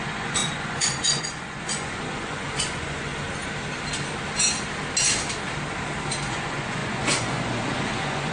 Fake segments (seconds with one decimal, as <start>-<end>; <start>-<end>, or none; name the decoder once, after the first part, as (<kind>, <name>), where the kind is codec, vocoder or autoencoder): 0.0-3.1 (vocoder, Vocos); 6.3-8.3